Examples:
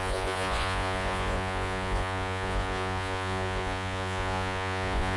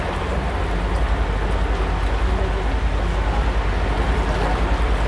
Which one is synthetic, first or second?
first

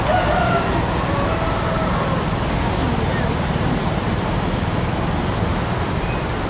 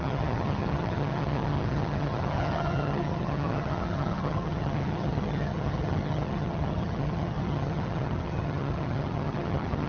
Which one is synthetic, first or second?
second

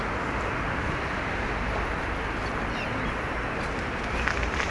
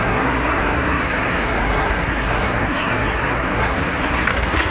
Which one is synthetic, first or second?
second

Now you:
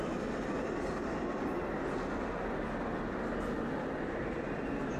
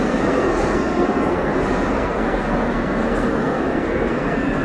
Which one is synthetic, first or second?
second